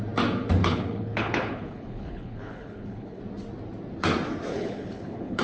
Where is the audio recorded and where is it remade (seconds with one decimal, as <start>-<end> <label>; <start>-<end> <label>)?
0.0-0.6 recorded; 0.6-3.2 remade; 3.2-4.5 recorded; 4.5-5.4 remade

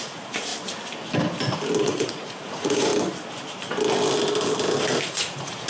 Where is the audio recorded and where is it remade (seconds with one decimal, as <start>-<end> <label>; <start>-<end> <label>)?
0.0-0.5 remade; 0.5-1.8 recorded; 1.8-2.9 remade; 2.9-5.0 recorded; 5.0-5.7 remade

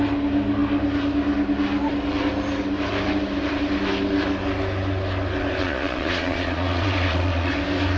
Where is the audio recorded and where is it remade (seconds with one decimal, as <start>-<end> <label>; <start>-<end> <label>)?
0.0-5.6 recorded; 5.6-7.5 remade; 7.5-8.0 recorded

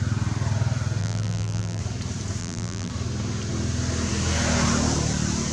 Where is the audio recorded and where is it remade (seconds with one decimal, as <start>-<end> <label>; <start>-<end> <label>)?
0.0-1.0 recorded; 1.0-1.8 remade; 1.8-2.4 recorded; 2.4-2.9 remade; 2.9-5.5 recorded